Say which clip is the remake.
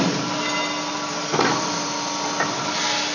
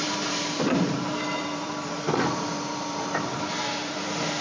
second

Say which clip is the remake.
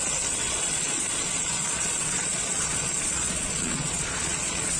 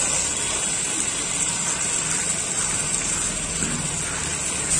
first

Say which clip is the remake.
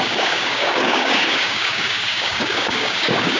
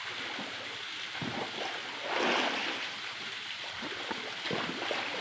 first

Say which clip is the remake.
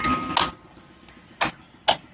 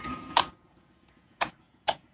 second